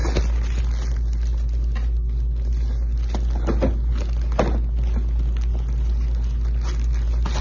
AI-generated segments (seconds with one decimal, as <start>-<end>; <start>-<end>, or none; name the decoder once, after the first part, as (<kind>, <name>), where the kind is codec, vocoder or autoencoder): none